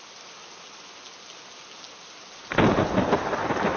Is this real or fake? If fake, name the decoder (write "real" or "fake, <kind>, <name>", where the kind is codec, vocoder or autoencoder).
real